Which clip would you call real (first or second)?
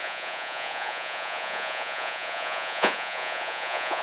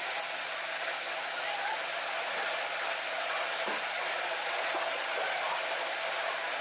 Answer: second